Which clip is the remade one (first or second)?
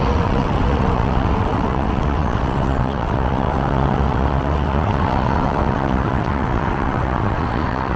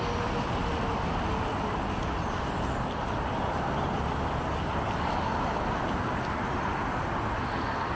first